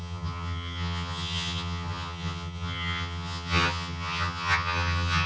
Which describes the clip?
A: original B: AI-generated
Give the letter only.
B